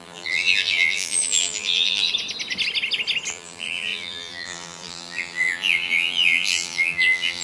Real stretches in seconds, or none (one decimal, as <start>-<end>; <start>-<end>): 2.1-3.3